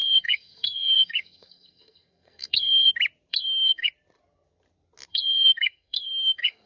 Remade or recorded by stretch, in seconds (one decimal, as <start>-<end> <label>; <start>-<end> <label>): 0.0-2.9 remade; 2.9-3.3 recorded; 3.3-3.9 remade; 3.9-5.1 recorded; 5.1-6.7 remade